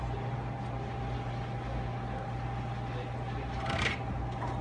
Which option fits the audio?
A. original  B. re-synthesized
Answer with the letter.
A